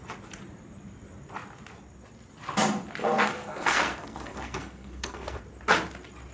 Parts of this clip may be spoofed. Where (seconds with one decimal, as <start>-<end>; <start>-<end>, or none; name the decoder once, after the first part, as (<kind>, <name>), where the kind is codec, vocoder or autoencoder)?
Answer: 3.0-5.4 (codec, SNAC)